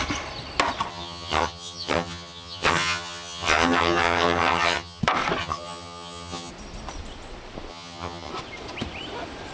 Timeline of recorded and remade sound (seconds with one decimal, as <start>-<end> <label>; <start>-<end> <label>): 0.0-0.9 recorded; 0.9-5.0 remade; 5.0-5.4 recorded; 5.4-6.5 remade; 6.5-7.7 recorded; 7.7-8.3 remade; 8.3-9.5 recorded

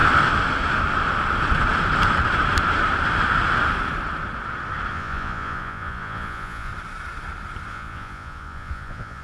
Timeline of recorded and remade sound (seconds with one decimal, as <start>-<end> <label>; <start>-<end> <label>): 0.0-4.9 recorded; 4.9-6.7 remade; 6.7-7.7 recorded; 7.7-9.2 remade